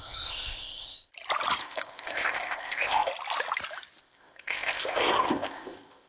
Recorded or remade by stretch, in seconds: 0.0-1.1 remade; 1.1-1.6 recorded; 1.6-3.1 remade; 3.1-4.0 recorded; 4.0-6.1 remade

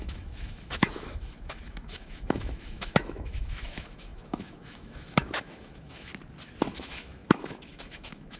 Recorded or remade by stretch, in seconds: 0.0-6.1 remade; 6.1-6.7 recorded; 6.7-8.4 remade

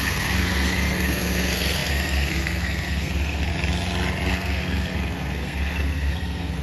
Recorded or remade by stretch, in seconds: 0.0-3.5 remade; 3.5-4.3 recorded; 4.3-6.6 remade

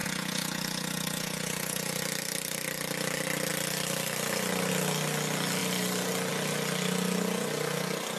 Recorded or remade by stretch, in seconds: 0.0-2.0 remade; 2.0-8.2 recorded

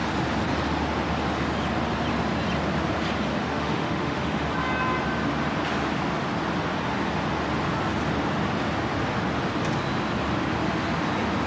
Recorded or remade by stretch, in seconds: 0.0-3.3 recorded; 3.3-4.5 remade; 4.5-11.5 recorded

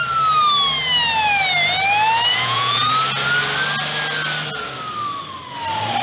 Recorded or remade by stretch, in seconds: 0.0-2.3 recorded; 2.3-2.9 remade; 2.9-6.0 recorded